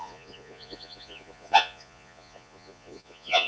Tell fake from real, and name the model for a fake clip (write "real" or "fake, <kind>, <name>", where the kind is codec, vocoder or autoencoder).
fake, vocoder, Vocos